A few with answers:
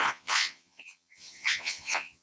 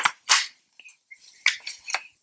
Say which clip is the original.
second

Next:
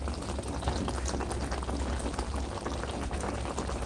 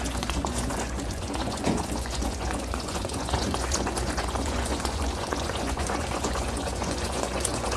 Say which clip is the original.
first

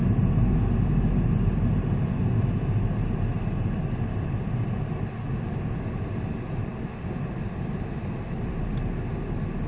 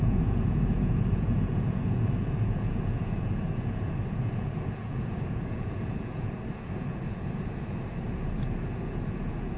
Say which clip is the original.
first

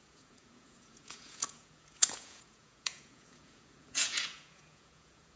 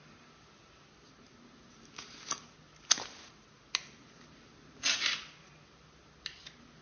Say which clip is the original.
second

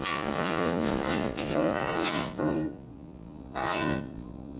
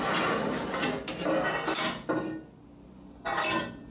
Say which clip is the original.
second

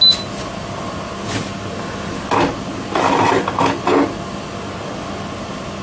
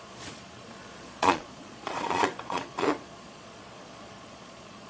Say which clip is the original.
first